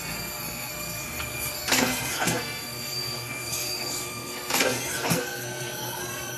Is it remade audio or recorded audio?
remade